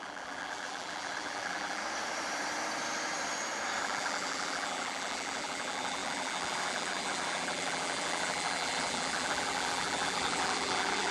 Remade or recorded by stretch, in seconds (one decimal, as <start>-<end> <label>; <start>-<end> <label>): 0.0-1.8 remade; 1.8-3.8 recorded; 3.8-11.1 remade